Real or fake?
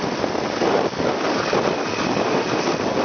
real